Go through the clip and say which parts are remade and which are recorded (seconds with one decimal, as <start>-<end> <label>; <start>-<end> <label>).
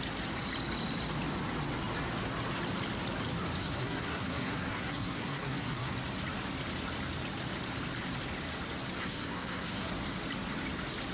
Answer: 0.0-3.6 recorded; 3.6-5.9 remade; 5.9-9.0 recorded; 9.0-9.9 remade; 9.9-11.1 recorded